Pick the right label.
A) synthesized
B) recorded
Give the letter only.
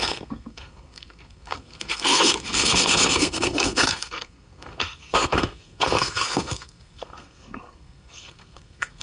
A